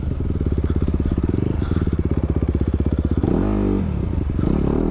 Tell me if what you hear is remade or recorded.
recorded